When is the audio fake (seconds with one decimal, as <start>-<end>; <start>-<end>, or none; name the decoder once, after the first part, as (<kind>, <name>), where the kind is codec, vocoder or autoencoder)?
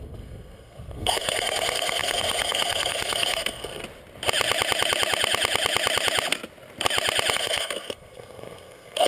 0.0-3.8 (codec, SNAC); 7.3-9.1